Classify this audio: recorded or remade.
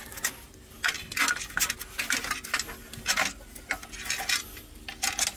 recorded